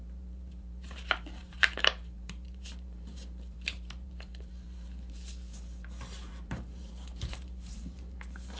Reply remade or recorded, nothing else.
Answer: remade